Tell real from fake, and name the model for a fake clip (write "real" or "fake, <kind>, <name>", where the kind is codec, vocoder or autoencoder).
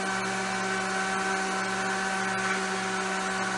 real